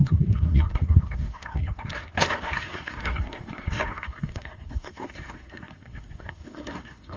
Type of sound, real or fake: fake